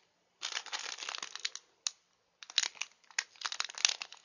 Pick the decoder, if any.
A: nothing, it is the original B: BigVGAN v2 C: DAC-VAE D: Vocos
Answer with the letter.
A